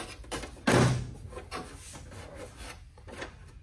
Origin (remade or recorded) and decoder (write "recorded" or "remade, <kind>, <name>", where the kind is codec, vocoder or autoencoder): recorded